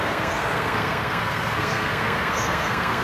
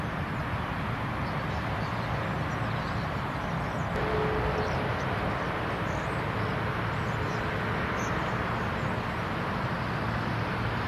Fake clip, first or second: first